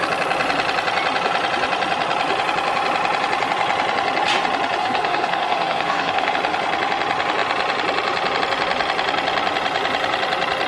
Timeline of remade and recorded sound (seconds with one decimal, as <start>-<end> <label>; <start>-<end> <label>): 0.0-4.8 recorded; 4.8-6.3 remade; 6.3-10.7 recorded